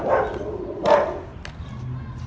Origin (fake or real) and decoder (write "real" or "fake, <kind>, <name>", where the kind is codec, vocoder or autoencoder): real